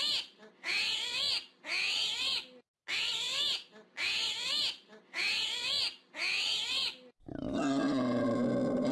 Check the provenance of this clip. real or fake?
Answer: real